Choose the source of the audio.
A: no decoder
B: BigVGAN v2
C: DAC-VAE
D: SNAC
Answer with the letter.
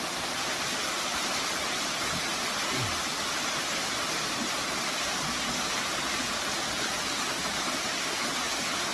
A